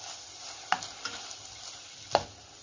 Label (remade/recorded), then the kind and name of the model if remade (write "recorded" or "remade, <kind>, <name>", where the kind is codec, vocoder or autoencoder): recorded